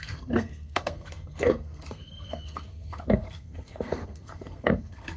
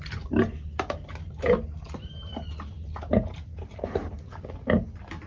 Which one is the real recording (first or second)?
second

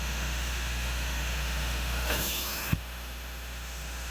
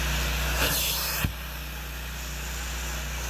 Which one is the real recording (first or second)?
second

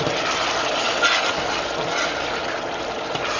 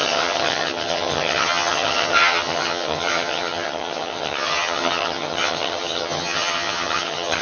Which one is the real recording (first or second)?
first